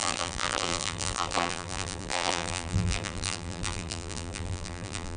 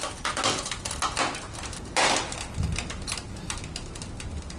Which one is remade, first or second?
first